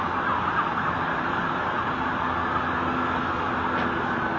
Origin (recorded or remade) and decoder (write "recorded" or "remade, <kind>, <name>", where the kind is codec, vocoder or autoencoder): recorded